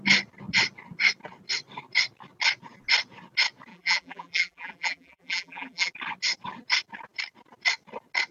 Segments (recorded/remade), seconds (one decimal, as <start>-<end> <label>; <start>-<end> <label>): 0.0-3.7 recorded; 3.7-5.9 remade; 5.9-8.3 recorded